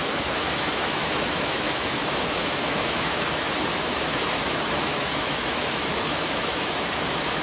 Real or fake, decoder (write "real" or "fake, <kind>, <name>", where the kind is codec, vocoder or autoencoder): fake, autoencoder, DAC-VAE